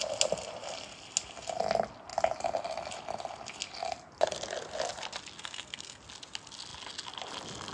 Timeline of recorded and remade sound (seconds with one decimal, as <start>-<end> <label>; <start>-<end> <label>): 0.0-5.4 recorded; 5.4-6.0 remade; 6.0-7.7 recorded

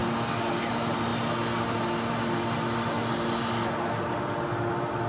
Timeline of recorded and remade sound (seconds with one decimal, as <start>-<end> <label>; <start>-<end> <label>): 0.0-5.1 recorded

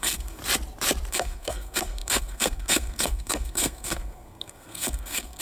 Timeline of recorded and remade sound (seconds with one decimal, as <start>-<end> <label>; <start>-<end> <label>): 0.0-0.4 remade; 0.4-1.1 recorded; 1.1-5.4 remade

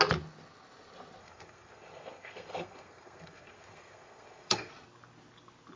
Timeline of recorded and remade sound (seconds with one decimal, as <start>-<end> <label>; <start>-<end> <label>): 0.0-1.2 recorded; 1.2-4.7 remade; 4.7-5.8 recorded